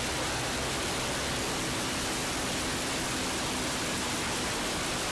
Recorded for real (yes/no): yes